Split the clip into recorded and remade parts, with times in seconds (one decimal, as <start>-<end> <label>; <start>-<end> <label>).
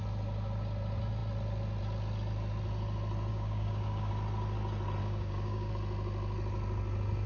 0.0-3.3 recorded; 3.3-4.1 remade; 4.1-5.0 recorded; 5.0-5.7 remade; 5.7-7.3 recorded